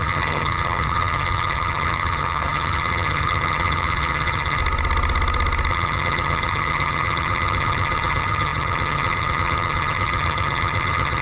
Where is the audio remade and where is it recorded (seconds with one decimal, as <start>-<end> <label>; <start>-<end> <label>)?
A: 0.0-4.6 remade; 4.6-5.7 recorded; 5.7-11.2 remade